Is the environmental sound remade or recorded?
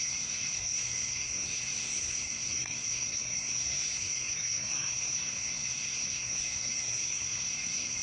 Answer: remade